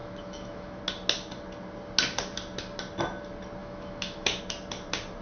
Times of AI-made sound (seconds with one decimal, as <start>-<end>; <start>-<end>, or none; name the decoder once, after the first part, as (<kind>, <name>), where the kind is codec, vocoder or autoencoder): 0.0-0.8 (autoencoder, DAC-VAE); 3.6-4.4